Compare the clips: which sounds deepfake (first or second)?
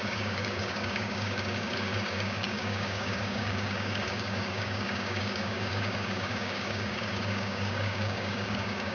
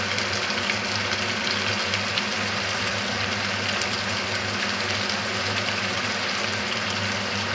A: first